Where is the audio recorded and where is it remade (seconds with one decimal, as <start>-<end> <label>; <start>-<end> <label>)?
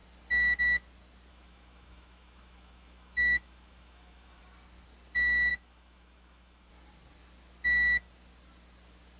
0.0-1.3 recorded; 1.3-4.4 remade; 4.4-5.5 recorded; 5.5-6.7 remade; 6.7-9.2 recorded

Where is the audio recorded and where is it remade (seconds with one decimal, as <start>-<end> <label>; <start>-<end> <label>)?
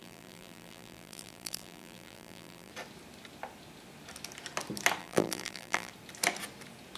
0.0-2.7 remade; 2.7-5.0 recorded; 5.0-5.9 remade; 5.9-7.0 recorded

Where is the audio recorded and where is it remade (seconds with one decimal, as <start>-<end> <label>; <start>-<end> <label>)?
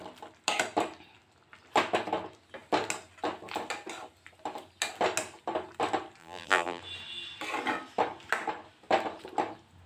0.0-6.2 recorded; 6.2-6.8 remade; 6.8-9.9 recorded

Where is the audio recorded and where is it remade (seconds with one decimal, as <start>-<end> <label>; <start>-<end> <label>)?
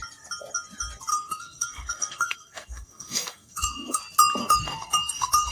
0.0-1.1 recorded; 1.1-4.0 remade; 4.0-4.4 recorded; 4.4-5.5 remade